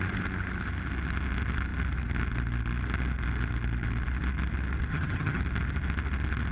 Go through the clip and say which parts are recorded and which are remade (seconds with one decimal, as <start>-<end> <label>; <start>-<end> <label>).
0.0-4.9 recorded; 4.9-5.4 remade; 5.4-6.5 recorded